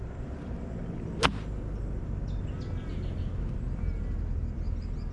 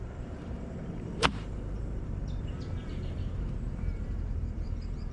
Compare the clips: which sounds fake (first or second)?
second